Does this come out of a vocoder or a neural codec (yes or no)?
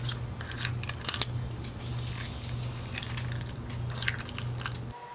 no